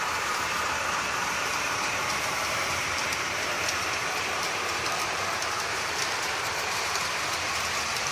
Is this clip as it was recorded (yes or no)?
no